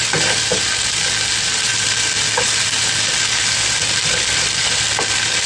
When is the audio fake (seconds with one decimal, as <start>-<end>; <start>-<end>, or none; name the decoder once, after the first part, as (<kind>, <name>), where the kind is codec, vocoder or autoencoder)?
none